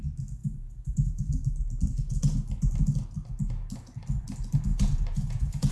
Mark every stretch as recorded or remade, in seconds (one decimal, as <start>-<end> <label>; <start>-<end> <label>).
0.0-0.4 recorded; 0.4-1.2 remade; 1.2-4.7 recorded; 4.7-5.7 remade